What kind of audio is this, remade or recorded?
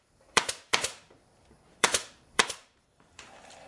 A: remade